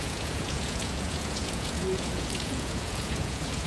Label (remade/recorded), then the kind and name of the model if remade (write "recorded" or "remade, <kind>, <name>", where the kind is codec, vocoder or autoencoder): remade, vocoder, Vocos